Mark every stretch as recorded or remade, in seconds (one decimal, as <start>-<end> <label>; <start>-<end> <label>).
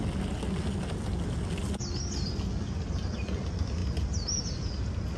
0.0-5.2 recorded